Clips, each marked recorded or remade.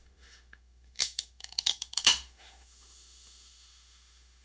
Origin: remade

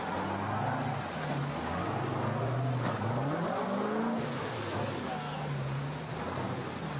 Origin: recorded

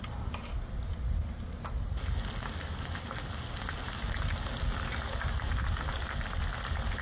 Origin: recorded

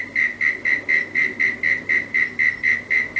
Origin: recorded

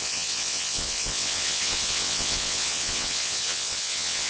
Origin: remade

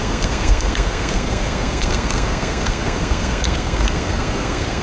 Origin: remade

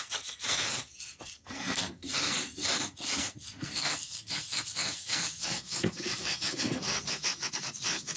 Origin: remade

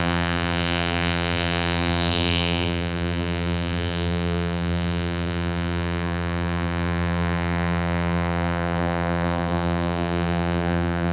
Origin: remade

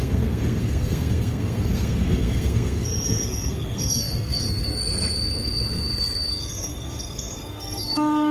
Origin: remade